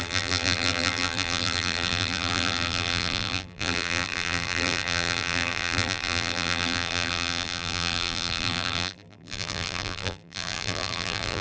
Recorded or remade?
remade